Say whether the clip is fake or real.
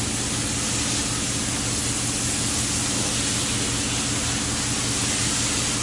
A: real